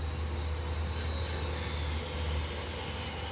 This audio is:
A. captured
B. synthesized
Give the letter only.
A